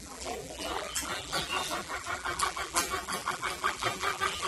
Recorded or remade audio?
remade